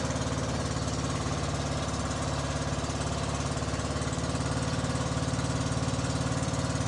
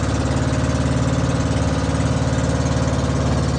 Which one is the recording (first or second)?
second